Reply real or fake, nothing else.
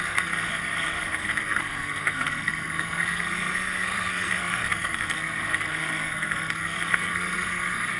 fake